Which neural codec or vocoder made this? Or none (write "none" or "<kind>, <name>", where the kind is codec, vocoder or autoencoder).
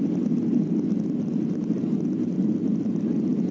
none